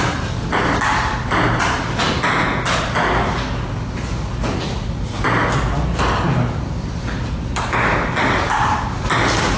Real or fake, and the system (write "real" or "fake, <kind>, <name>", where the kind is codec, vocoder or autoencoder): real